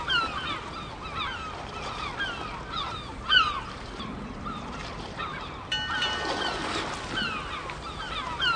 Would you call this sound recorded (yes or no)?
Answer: yes